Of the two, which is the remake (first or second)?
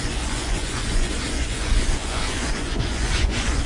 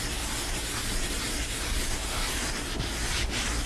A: first